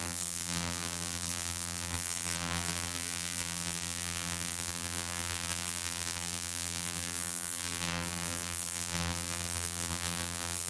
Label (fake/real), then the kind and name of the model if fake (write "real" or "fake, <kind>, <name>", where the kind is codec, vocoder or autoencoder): fake, vocoder, BigVGAN v2